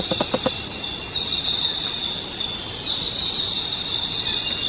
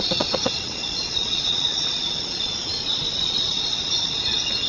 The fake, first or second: second